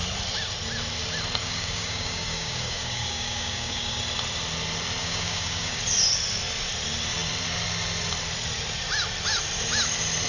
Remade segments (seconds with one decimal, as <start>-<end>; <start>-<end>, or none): 1.4-4.0; 5.0-5.8